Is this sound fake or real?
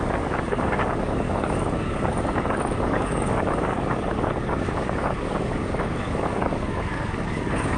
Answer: fake